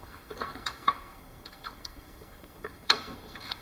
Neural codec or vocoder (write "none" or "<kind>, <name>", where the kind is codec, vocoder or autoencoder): codec, SNAC